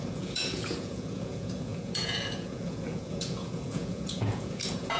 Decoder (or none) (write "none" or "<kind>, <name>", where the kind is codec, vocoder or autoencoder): vocoder, Vocos